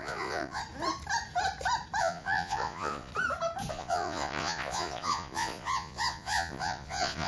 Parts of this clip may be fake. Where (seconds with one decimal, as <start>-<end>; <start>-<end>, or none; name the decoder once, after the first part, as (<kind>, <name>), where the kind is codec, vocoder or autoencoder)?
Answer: 0.0-0.6 (vocoder, Vocos); 2.0-3.1; 3.7-7.3